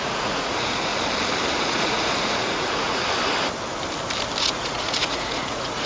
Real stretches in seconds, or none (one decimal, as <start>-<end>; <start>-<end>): 0.9-1.6; 3.0-4.4